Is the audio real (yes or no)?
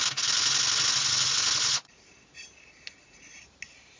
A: yes